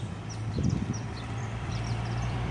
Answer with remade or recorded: remade